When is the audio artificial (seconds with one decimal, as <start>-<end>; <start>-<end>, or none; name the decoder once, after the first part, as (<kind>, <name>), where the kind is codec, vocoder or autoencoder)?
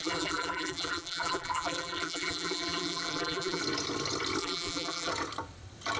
0.0-3.6 (vocoder, BigVGAN v2); 4.4-5.1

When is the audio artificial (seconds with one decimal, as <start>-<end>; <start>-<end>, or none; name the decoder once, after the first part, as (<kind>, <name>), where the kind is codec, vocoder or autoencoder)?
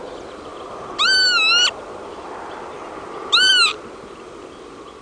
none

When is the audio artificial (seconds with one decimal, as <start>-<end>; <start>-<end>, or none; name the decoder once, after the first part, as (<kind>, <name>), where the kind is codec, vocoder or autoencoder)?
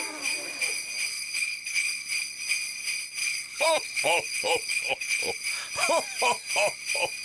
1.1-2.3 (codec, HILCodec); 3.2-5.5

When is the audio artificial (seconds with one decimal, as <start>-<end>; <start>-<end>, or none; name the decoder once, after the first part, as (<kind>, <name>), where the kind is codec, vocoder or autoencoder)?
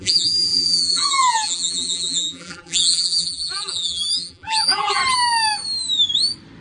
0.0-5.0 (vocoder, BigVGAN v2)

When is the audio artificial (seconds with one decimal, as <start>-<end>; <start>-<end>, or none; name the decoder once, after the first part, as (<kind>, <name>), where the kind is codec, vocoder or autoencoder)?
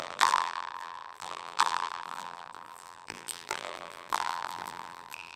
0.0-5.4 (vocoder, BigVGAN v2)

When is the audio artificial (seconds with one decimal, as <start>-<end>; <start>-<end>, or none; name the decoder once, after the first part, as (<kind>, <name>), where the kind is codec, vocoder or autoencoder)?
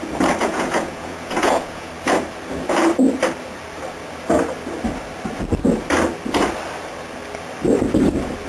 0.4-1.9 (vocoder, Vocos)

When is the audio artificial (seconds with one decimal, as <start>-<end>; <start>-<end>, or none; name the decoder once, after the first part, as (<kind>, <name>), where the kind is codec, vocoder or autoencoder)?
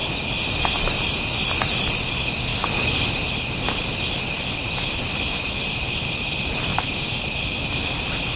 none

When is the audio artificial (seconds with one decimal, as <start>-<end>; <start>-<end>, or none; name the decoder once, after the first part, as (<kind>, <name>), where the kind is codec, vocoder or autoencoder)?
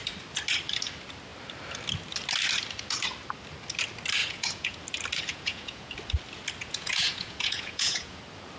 4.2-4.8 (vocoder, Vocos); 5.3-5.9; 6.6-8.2